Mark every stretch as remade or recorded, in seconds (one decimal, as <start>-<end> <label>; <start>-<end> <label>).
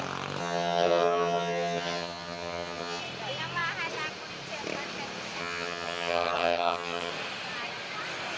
0.0-0.4 recorded; 0.4-3.0 remade; 3.0-5.4 recorded; 5.4-7.1 remade; 7.1-8.4 recorded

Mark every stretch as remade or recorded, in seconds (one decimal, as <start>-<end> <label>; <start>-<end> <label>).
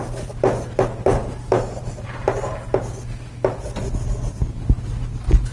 0.0-1.1 recorded; 1.1-2.6 remade; 2.6-5.5 recorded